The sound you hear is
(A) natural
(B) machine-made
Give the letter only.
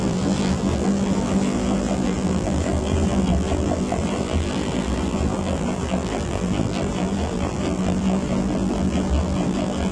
B